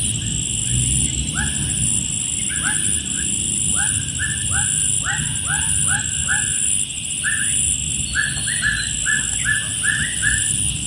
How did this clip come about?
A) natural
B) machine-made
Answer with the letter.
A